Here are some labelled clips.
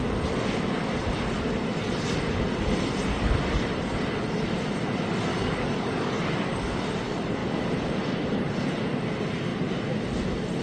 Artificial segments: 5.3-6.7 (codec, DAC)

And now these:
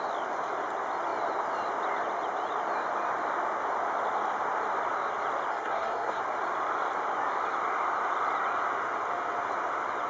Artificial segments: 5.5-6.2 (codec, SNAC)

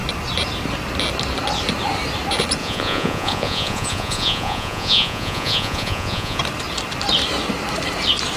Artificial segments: 2.6-6.4 (vocoder, Vocos)

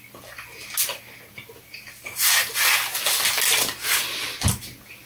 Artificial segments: none

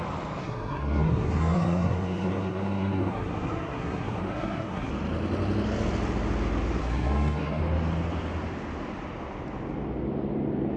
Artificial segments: 0.4-4.9 (codec, SNAC); 6.8-7.6